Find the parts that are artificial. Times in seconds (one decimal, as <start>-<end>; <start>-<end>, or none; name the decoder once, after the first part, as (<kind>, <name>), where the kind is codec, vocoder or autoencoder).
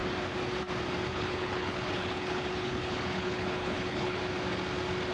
1.1-4.2 (codec, HILCodec)